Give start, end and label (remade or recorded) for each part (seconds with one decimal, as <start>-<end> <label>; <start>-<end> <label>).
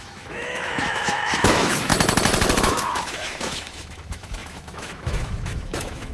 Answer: 0.0-1.9 remade; 1.9-2.6 recorded; 2.6-6.1 remade